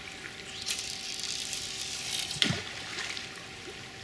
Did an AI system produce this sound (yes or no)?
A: no